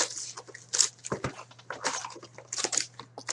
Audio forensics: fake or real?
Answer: real